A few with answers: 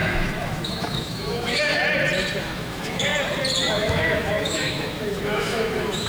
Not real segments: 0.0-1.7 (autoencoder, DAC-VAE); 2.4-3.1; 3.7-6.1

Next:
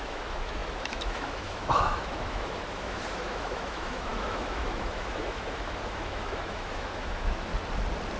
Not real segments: 0.0-7.5 (autoencoder, DAC-VAE)

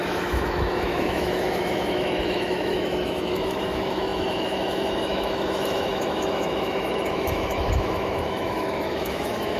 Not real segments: 0.0-9.6 (autoencoder, DAC-VAE)

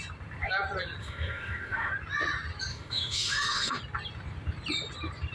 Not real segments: 1.0-1.9 (autoencoder, DAC-VAE); 2.7-3.8

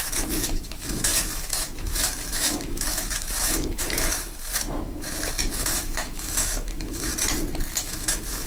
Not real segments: 0.0-7.1 (autoencoder, DAC-VAE); 7.7-8.5

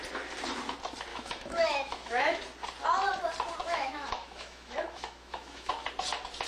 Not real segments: 1.1-2.4 (autoencoder, DAC-VAE); 3.6-5.7

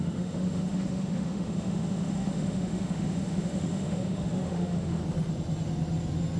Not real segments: 0.0-5.0 (autoencoder, DAC-VAE)